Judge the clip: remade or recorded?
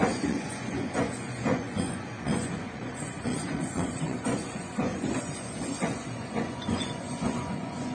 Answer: remade